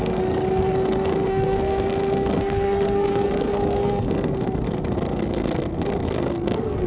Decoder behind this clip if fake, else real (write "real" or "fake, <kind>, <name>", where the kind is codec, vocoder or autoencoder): fake, codec, SNAC